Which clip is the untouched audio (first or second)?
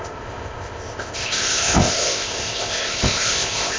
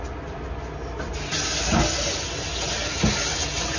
second